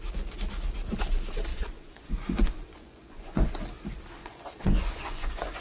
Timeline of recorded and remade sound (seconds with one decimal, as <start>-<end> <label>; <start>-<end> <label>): 0.0-1.5 recorded; 1.5-3.5 remade; 3.5-4.2 recorded; 4.2-5.6 remade